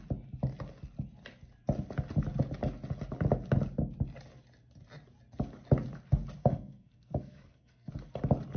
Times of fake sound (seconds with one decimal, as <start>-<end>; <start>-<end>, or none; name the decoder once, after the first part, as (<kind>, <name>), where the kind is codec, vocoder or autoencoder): 6.4-7.9 (codec, SNAC)